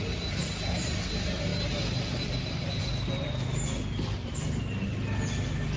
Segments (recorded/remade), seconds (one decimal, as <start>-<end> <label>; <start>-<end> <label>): 0.0-5.8 recorded

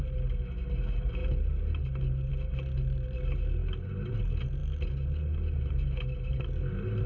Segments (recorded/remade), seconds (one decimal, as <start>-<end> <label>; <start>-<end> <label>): 0.0-7.1 recorded

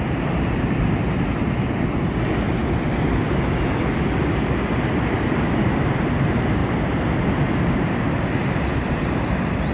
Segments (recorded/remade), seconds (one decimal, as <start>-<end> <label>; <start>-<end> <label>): 0.0-9.7 recorded

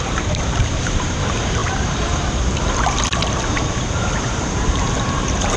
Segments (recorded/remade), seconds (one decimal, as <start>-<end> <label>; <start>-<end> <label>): 0.0-5.6 remade

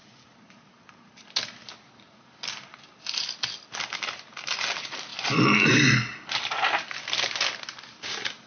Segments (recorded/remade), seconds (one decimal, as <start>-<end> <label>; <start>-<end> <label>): 0.0-8.5 recorded

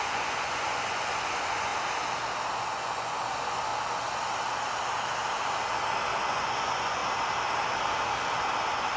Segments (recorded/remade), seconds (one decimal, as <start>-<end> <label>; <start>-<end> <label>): 0.0-1.7 remade; 1.7-2.6 recorded; 2.6-3.7 remade; 3.7-6.2 recorded; 6.2-7.0 remade; 7.0-8.6 recorded; 8.6-9.0 remade

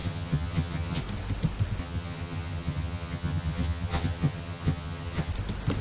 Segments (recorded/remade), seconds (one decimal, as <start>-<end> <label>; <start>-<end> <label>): 0.0-1.0 remade; 1.0-1.8 recorded; 1.8-5.3 remade; 5.3-5.8 recorded

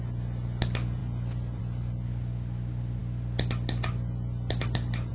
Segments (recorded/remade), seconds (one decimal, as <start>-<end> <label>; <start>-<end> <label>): 0.0-5.1 recorded